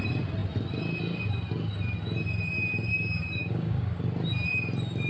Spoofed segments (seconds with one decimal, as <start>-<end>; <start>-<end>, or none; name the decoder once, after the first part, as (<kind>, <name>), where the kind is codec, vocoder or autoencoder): 3.4-4.0 (codec, DAC)